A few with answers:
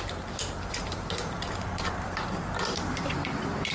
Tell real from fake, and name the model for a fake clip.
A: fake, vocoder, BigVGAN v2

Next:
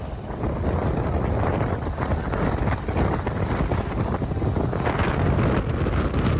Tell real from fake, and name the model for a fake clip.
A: real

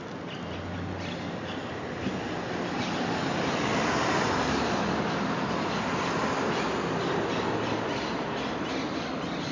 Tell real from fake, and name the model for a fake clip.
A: real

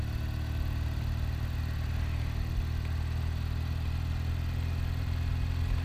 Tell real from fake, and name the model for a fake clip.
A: real